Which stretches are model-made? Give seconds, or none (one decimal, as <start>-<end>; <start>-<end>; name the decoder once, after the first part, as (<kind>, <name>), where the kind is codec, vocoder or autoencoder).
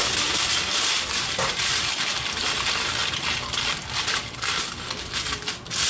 none